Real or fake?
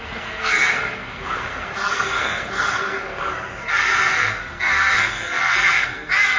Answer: fake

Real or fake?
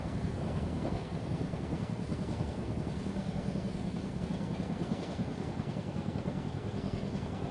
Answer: fake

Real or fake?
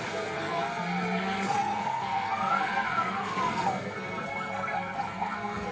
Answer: fake